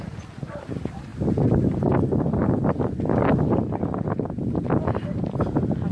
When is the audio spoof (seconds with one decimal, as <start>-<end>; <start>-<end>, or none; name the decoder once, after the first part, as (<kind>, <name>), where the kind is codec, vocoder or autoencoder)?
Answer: none